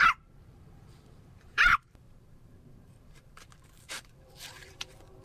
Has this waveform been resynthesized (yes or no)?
yes